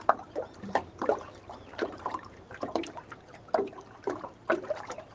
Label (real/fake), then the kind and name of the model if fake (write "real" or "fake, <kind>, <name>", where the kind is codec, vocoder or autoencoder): fake, vocoder, BigVGAN v2